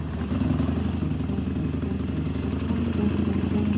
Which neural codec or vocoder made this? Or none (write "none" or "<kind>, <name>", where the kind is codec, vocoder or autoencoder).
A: none